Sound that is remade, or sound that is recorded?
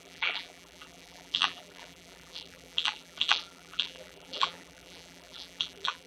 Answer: remade